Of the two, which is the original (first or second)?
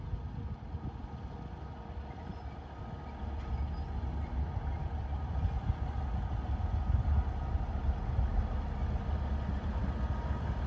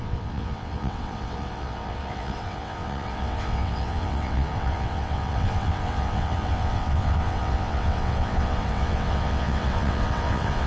first